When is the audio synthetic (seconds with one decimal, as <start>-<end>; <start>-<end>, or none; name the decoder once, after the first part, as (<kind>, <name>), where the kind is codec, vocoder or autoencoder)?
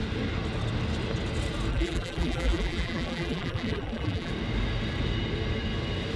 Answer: 1.7-4.3 (vocoder, BigVGAN v2)